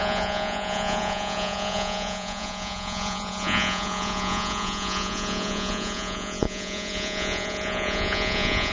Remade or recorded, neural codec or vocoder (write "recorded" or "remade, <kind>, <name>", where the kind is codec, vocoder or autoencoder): remade, vocoder, Vocos